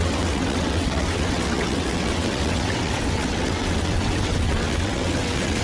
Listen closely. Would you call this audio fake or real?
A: fake